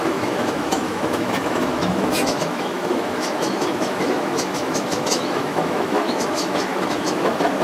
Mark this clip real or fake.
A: fake